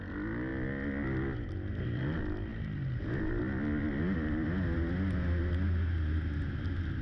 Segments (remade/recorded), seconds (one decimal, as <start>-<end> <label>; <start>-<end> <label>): 0.0-7.0 recorded